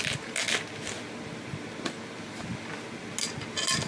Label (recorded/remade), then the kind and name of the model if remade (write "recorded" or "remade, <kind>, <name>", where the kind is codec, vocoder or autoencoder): recorded